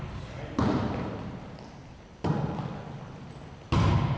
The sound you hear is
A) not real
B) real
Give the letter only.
B